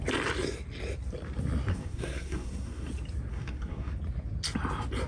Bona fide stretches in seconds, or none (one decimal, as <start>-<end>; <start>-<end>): 0.0-1.7; 2.9-3.3; 3.9-5.1